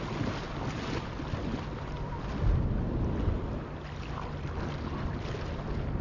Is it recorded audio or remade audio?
recorded